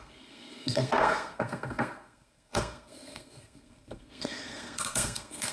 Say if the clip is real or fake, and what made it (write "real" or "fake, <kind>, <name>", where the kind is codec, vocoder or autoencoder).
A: fake, codec, SNAC